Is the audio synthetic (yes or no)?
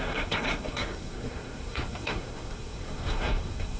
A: yes